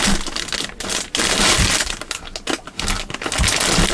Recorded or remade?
recorded